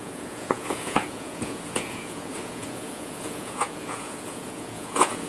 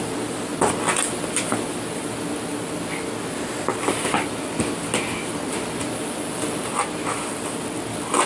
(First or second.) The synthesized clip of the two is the first